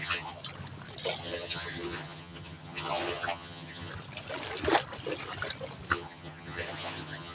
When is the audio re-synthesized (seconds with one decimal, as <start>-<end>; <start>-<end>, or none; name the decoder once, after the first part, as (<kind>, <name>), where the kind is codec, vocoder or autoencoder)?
0.0-0.4 (vocoder, HiFi-GAN); 1.2-3.9; 5.9-7.3